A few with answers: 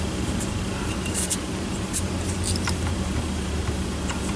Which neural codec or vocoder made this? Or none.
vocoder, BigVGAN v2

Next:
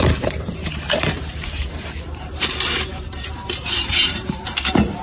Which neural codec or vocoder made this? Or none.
vocoder, BigVGAN v2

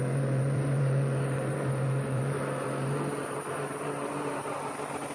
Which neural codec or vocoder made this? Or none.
vocoder, BigVGAN v2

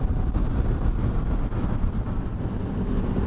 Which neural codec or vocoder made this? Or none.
none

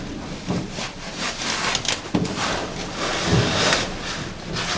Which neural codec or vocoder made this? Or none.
none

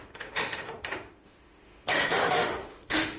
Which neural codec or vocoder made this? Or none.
autoencoder, DAC-VAE